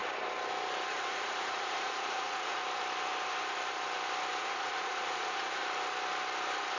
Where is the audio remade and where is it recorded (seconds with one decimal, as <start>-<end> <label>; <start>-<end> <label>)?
0.0-0.9 recorded; 0.9-2.6 remade; 2.6-4.4 recorded; 4.4-5.6 remade; 5.6-6.8 recorded